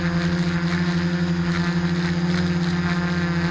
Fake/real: real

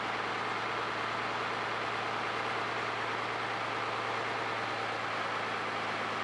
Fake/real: real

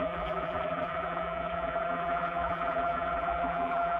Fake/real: fake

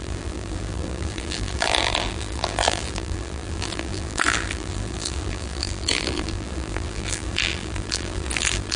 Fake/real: fake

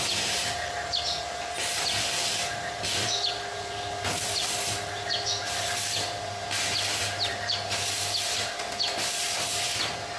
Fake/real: fake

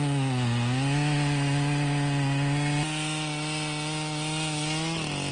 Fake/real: real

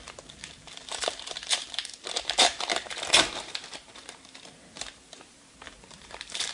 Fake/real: fake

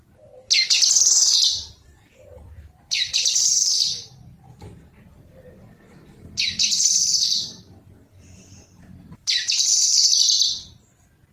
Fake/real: fake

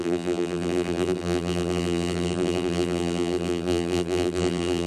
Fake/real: fake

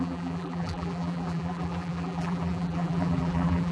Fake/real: fake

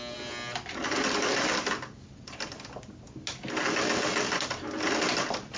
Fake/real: real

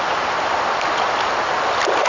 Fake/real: real